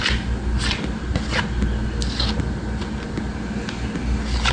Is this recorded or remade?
recorded